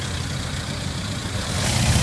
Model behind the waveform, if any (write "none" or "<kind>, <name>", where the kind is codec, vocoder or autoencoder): none